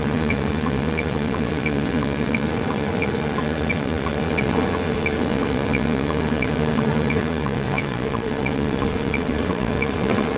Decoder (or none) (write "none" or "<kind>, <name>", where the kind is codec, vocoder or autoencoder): vocoder, WaveNeXt